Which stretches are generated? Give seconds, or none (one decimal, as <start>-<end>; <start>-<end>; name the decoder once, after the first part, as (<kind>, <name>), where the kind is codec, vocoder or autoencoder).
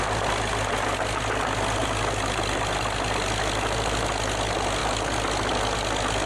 none